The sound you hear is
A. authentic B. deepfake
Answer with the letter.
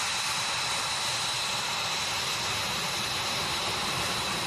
A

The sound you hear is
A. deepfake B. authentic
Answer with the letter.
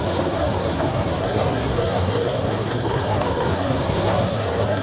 A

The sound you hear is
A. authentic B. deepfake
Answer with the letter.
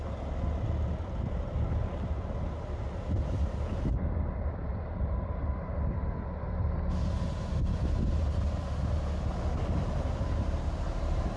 A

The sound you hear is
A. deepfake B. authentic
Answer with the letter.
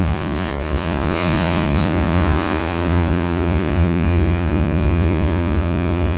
A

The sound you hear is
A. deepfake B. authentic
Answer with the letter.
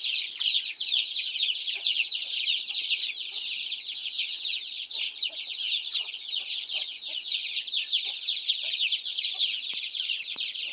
A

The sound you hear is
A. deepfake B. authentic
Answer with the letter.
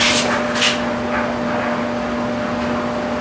B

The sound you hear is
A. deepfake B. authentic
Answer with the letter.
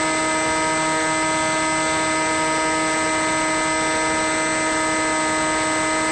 B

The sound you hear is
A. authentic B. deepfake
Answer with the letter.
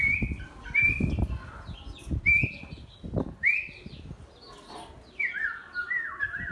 A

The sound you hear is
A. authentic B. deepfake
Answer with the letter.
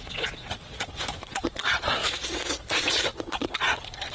B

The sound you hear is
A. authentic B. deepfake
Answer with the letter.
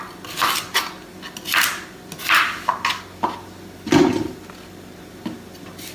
A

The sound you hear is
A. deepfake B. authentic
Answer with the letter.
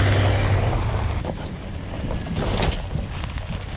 B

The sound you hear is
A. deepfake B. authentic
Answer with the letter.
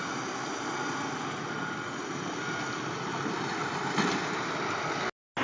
B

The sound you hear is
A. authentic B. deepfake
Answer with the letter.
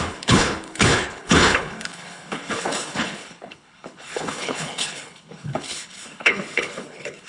B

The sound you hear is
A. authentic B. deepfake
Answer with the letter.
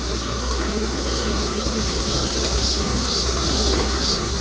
B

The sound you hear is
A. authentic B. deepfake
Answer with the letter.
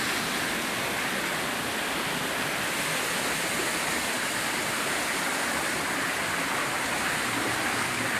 A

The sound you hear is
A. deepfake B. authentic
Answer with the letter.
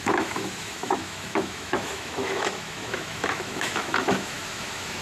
A